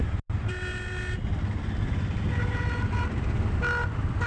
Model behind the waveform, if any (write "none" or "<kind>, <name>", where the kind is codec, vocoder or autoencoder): none